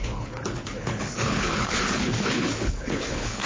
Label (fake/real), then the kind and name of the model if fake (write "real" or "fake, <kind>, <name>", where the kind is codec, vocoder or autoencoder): fake, codec, HILCodec